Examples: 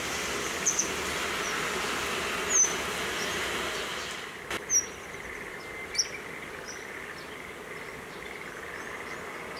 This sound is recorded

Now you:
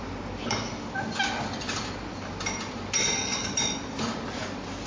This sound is recorded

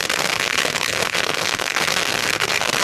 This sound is remade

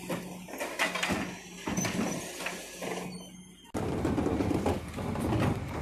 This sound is recorded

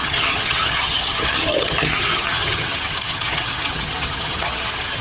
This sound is remade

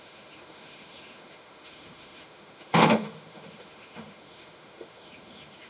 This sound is remade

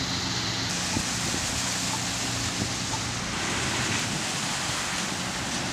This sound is recorded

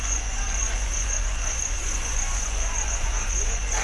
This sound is remade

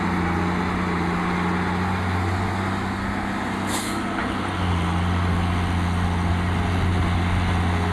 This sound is recorded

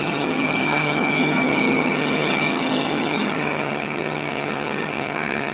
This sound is remade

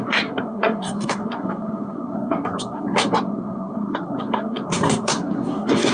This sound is remade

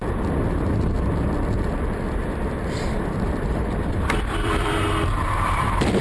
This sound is remade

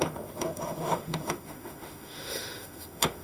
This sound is remade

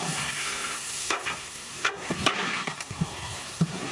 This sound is remade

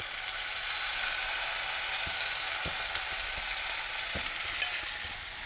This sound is recorded